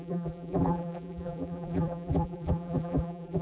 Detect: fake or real fake